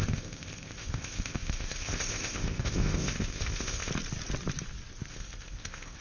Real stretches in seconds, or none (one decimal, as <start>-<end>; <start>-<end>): 3.9-5.1